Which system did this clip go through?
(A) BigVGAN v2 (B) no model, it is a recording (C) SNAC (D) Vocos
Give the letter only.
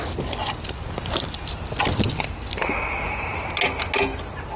B